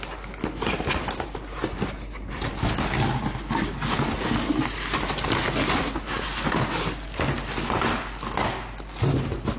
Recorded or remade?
recorded